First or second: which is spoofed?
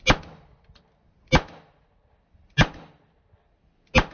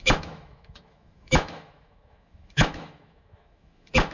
second